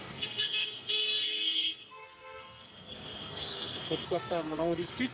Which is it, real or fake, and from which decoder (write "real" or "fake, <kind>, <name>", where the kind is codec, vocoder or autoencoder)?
fake, codec, SNAC